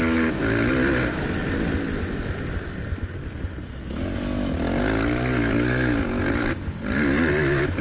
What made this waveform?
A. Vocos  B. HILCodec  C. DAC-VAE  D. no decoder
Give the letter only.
D